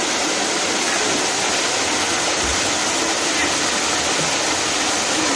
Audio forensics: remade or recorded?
recorded